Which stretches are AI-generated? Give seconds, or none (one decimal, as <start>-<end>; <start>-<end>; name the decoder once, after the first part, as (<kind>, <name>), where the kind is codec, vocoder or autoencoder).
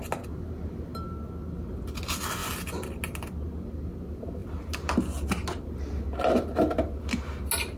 none